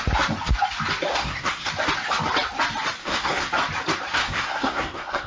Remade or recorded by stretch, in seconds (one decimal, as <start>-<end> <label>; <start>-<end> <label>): 0.0-1.1 recorded; 1.1-1.7 remade; 1.7-3.0 recorded; 3.0-3.5 remade; 3.5-4.2 recorded; 4.2-5.3 remade